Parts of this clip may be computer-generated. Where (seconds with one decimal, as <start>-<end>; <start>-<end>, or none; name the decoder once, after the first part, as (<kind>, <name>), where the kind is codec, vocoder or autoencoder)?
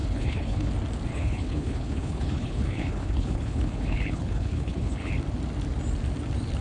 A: 0.0-0.7 (codec, HILCodec); 1.1-5.1